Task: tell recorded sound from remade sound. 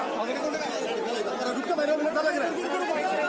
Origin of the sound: recorded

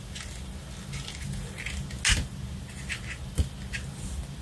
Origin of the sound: recorded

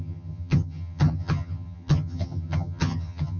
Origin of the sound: remade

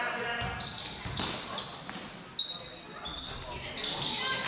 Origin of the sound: recorded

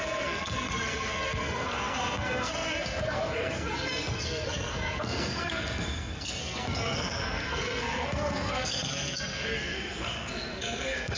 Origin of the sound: remade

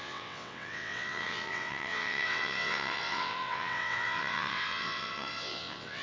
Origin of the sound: remade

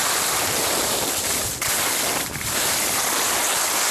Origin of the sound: recorded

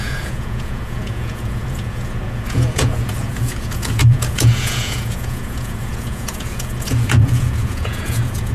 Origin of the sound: remade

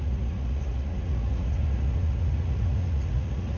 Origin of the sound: remade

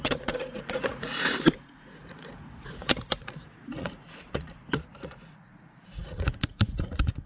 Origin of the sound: remade